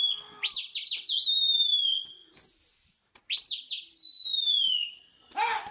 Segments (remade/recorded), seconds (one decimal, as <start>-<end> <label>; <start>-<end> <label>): 0.0-5.7 recorded